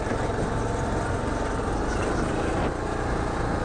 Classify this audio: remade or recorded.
recorded